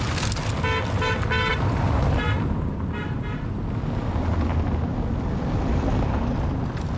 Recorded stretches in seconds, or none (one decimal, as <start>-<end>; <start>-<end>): 0.0-1.5; 3.6-7.0